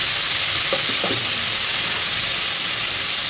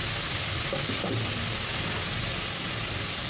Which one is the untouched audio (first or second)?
second